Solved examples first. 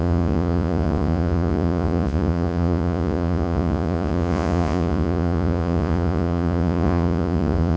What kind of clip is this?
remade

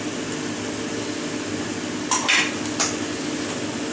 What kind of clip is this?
recorded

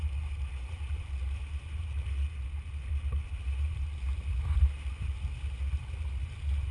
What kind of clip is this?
recorded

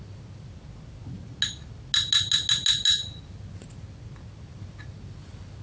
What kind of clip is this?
recorded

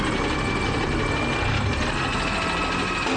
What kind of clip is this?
recorded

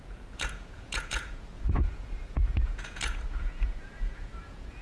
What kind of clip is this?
remade